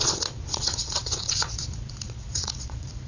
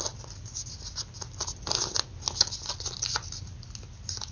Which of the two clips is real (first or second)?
second